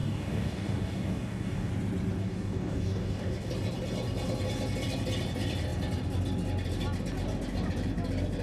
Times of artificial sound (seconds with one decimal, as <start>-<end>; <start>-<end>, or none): 0.0-1.7; 2.2-3.5